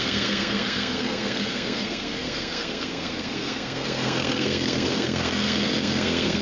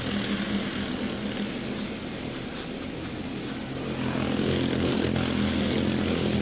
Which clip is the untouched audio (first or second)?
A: second